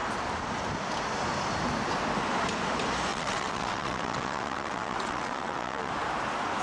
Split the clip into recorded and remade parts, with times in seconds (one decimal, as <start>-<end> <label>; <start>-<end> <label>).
0.0-3.1 recorded; 3.1-5.9 remade; 5.9-6.6 recorded